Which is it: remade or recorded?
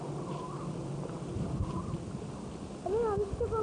recorded